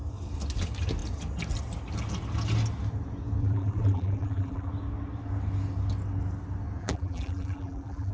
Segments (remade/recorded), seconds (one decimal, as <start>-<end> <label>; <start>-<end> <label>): 0.0-3.4 recorded; 3.4-4.7 remade; 4.7-6.8 recorded; 6.8-8.1 remade